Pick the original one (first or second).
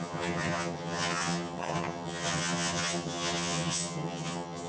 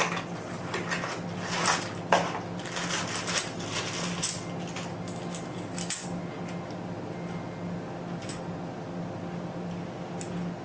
second